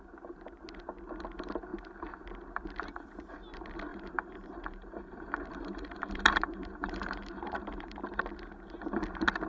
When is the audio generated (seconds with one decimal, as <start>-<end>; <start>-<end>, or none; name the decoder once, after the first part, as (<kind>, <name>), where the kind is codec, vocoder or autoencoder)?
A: 3.9-8.0 (vocoder, BigVGAN v2)